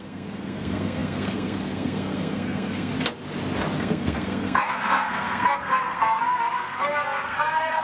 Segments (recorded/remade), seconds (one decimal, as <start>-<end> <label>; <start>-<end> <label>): 0.0-2.9 remade; 2.9-3.8 recorded; 3.8-7.8 remade